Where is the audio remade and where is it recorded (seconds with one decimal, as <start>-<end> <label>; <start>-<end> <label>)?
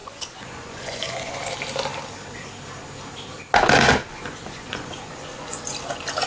0.0-1.4 remade; 1.4-4.1 recorded; 4.1-5.6 remade; 5.6-6.3 recorded